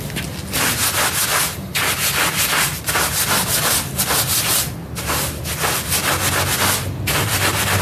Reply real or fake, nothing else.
real